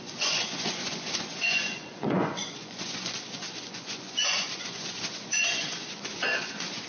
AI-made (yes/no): yes